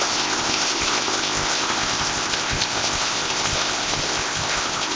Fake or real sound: fake